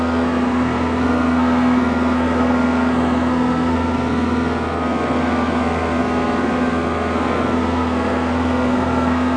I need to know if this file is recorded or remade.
remade